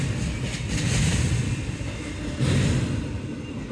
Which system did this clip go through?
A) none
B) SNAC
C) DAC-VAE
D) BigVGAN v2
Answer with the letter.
A